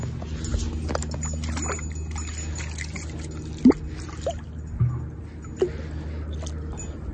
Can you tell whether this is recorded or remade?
recorded